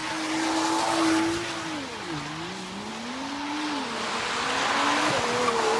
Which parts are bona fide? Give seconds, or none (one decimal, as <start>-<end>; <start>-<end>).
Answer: 0.0-5.8